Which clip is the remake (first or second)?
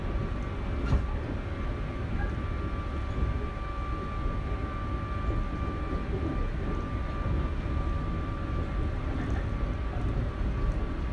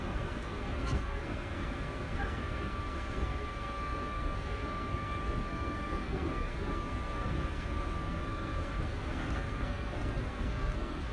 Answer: second